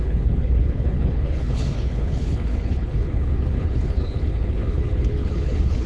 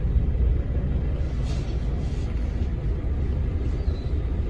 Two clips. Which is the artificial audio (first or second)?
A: first